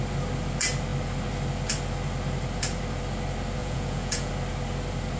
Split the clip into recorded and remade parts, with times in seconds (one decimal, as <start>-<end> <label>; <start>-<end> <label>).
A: 0.0-3.6 recorded; 3.6-4.3 remade; 4.3-5.2 recorded